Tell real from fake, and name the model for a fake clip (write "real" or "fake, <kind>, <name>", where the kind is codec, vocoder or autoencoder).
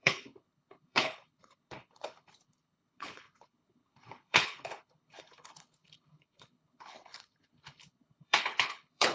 fake, codec, HILCodec